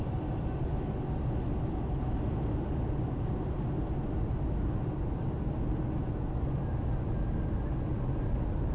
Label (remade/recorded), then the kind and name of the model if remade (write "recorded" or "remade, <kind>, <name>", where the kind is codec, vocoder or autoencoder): recorded